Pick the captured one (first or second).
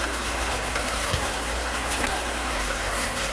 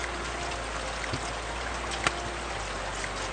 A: second